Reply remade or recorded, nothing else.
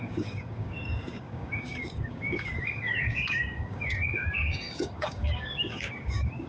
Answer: remade